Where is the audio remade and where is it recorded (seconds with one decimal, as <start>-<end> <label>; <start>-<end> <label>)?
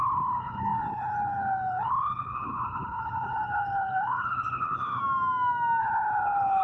0.0-5.0 remade; 5.0-5.8 recorded; 5.8-6.6 remade